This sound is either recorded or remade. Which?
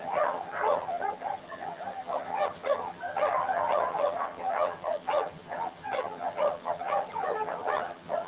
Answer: remade